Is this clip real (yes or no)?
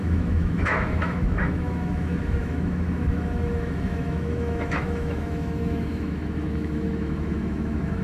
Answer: no